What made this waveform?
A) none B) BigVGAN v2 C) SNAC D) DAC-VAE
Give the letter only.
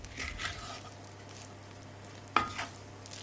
A